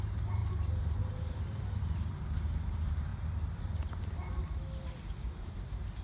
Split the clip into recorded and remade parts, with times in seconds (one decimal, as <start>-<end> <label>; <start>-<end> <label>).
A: 0.0-3.1 remade; 3.1-5.3 recorded; 5.3-6.0 remade